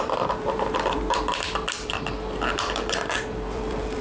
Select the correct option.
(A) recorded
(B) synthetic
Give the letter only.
B